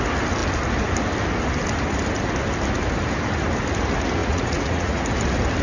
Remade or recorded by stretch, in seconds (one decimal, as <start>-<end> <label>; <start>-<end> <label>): 0.0-4.2 recorded; 4.2-5.0 remade; 5.0-5.6 recorded